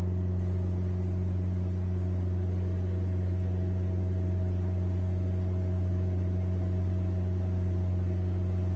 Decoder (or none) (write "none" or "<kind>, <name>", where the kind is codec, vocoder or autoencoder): none